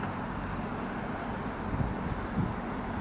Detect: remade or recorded recorded